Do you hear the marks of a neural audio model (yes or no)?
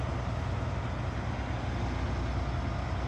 no